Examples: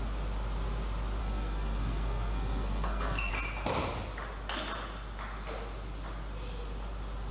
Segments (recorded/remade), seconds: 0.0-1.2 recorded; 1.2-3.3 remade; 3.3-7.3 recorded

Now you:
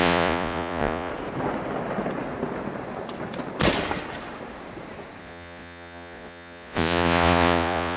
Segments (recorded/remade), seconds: 0.0-1.1 remade; 1.1-5.2 recorded; 5.2-8.0 remade

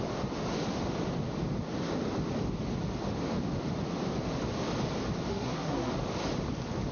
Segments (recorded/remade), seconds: 0.0-5.3 recorded; 5.3-5.9 remade; 5.9-6.9 recorded

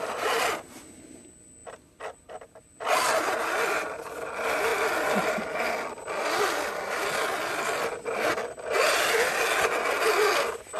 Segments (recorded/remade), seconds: 0.0-10.8 recorded

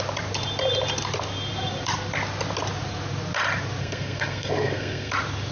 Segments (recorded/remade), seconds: 0.0-3.8 recorded; 3.8-5.1 remade; 5.1-5.5 recorded

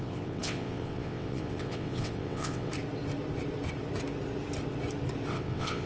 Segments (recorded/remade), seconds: 0.0-2.7 remade; 2.7-5.3 recorded; 5.3-5.9 remade

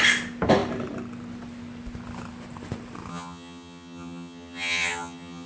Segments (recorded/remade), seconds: 0.0-3.1 recorded; 3.1-5.5 remade